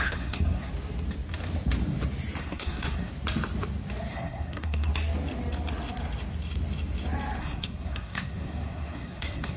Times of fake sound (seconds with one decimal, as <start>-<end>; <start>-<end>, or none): 0.0-0.7; 2.4-3.1; 4.1-4.9; 7.4-9.6

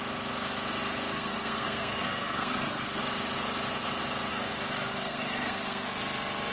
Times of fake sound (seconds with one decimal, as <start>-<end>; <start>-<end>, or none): 1.1-3.0; 4.3-6.0

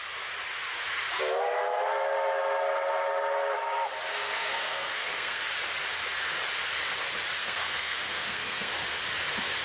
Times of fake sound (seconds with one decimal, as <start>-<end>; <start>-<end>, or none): 4.1-5.4; 7.4-8.7

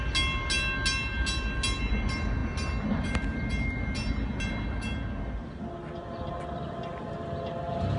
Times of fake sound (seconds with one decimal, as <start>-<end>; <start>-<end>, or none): none

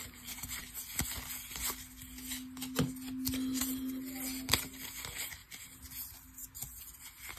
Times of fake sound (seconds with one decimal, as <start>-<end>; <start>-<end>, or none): none